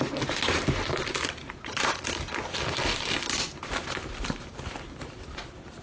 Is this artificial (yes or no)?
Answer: no